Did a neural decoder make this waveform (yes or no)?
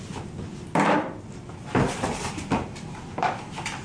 no